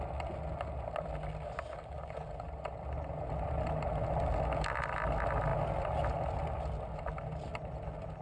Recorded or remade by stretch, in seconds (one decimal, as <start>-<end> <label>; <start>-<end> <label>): 0.0-8.2 recorded